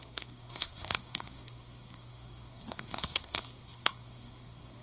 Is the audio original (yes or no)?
no